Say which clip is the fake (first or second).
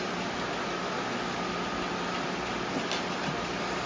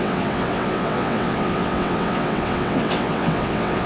second